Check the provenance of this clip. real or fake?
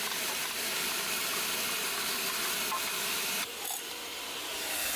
real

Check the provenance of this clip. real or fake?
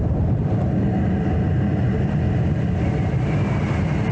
real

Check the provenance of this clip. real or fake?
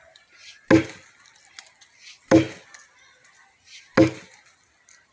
real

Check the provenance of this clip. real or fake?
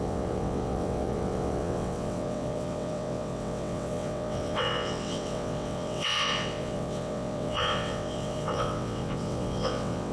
fake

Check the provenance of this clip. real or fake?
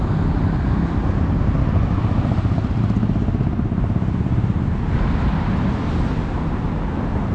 real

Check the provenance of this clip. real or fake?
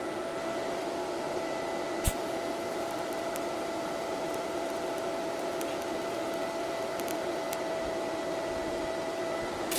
real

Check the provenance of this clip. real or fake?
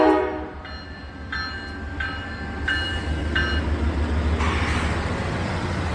real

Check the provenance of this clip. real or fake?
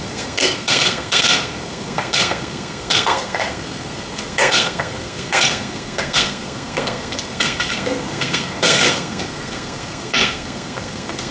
fake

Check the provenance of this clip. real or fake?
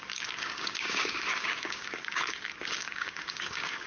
fake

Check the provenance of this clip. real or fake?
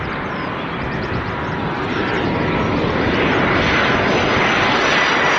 real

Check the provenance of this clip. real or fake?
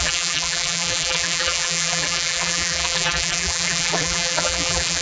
fake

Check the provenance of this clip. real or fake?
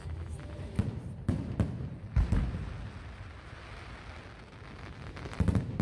real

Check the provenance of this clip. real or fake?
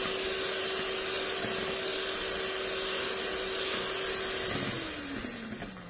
real